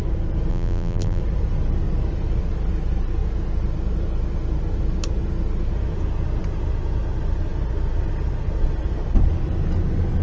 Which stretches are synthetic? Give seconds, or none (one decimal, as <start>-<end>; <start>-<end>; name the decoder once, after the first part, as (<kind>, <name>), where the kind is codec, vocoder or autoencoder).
0.5-1.2 (vocoder, BigVGAN v2)